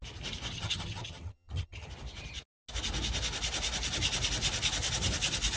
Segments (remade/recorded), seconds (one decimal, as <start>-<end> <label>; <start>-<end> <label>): 0.0-0.5 recorded; 0.5-1.9 remade; 1.9-5.6 recorded